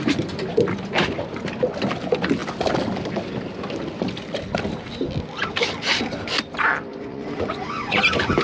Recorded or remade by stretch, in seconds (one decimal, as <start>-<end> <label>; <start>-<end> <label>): 0.0-6.9 recorded; 6.9-8.0 remade; 8.0-8.4 recorded